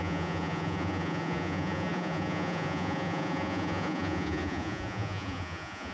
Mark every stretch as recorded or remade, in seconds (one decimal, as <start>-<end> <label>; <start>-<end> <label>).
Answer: 0.0-5.9 remade